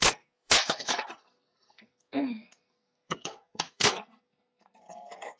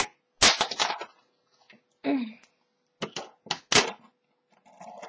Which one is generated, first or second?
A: first